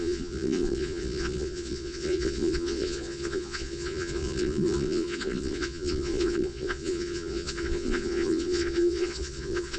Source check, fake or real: fake